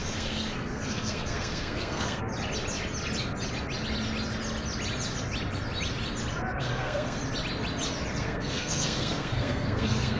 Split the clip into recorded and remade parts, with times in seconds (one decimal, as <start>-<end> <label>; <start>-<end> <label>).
0.0-2.3 remade; 2.3-6.6 recorded; 6.6-7.2 remade; 7.2-8.2 recorded; 8.2-10.2 remade